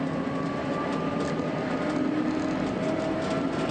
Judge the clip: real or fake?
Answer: real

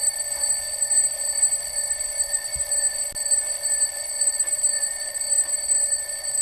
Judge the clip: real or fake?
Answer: real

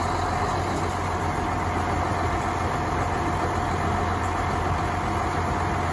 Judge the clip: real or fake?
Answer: real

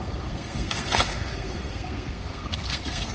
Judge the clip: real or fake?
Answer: fake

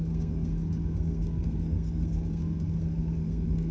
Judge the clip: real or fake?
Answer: fake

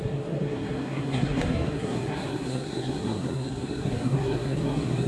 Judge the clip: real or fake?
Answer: fake